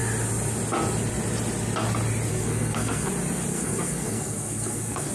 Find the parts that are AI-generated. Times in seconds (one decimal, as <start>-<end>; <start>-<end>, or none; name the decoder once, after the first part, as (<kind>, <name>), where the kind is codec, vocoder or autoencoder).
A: 2.3-3.1 (codec, SNAC); 3.5-5.1